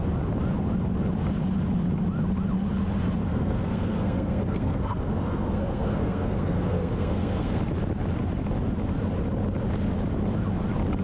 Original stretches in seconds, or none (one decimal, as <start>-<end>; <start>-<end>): 0.0-3.2; 7.6-11.0